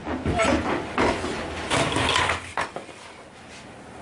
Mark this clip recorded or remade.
recorded